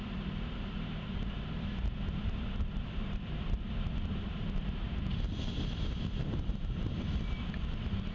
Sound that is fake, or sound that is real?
fake